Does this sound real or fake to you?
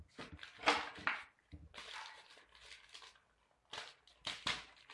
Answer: real